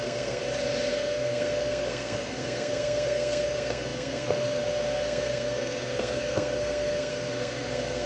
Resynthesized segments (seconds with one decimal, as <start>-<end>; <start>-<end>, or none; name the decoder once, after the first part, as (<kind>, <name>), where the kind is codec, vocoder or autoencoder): 0.0-0.4 (codec, SNAC); 0.9-8.1